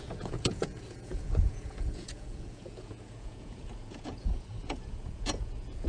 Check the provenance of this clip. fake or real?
fake